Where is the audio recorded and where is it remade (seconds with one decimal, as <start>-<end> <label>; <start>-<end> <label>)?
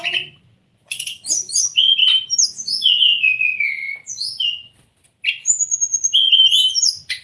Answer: 0.0-2.0 remade; 2.0-2.9 recorded; 2.9-3.8 remade; 3.8-6.7 recorded; 6.7-7.2 remade